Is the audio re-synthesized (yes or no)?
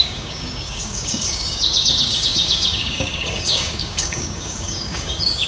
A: yes